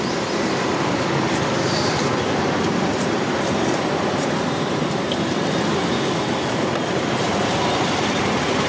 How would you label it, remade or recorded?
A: remade